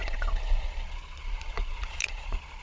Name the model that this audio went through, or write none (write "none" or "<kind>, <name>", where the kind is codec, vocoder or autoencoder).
vocoder, Vocos